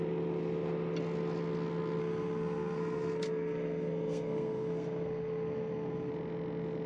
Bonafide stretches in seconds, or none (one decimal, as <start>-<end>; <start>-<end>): 0.0-2.0; 6.1-6.9